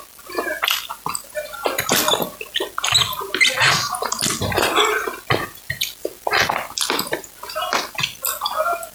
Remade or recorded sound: recorded